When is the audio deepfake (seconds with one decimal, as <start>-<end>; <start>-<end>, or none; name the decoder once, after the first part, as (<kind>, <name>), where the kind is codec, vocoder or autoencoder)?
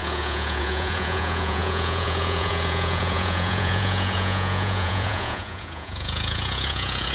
0.0-7.1 (vocoder, Vocos)